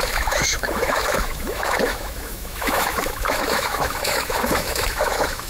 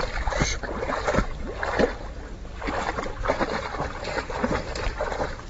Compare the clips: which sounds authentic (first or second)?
second